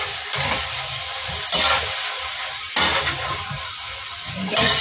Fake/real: fake